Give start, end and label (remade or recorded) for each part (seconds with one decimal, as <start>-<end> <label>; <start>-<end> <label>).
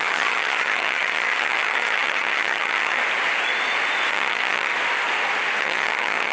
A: 0.0-3.0 remade; 3.0-4.1 recorded; 4.1-4.7 remade; 4.7-5.6 recorded; 5.6-6.3 remade